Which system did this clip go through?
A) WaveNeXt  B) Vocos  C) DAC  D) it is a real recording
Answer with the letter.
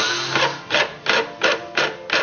D